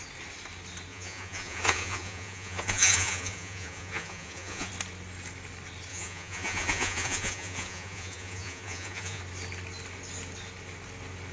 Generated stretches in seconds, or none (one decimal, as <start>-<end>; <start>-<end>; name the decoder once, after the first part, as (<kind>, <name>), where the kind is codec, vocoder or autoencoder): 0.9-4.7 (vocoder, Vocos); 5.9-9.2